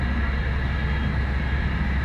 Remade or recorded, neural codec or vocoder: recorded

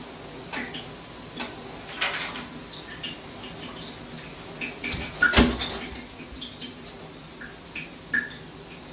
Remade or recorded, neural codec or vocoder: recorded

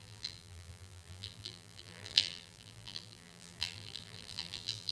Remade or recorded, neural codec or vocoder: remade, vocoder, BigVGAN v2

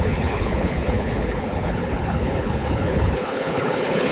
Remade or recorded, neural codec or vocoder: remade, codec, HILCodec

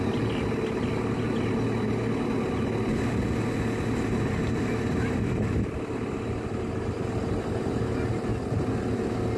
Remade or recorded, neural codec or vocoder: recorded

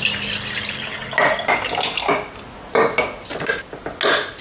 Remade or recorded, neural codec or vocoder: recorded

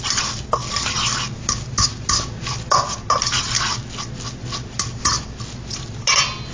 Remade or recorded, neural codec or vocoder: recorded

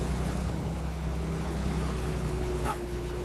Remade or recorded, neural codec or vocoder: remade, codec, HILCodec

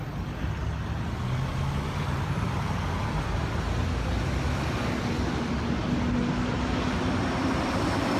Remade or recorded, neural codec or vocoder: recorded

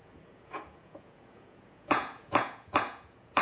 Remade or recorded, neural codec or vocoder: remade, vocoder, Vocos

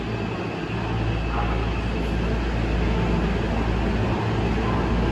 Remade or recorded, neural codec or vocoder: recorded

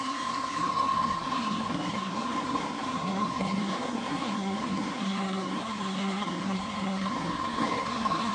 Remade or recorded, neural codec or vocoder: remade, codec, SNAC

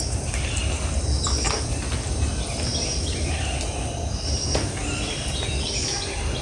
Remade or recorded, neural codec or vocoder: recorded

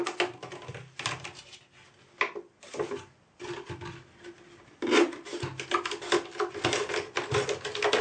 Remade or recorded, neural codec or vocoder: recorded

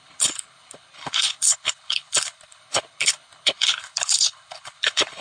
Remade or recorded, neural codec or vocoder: remade, codec, HILCodec